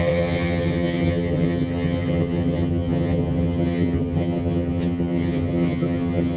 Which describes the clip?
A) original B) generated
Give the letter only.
B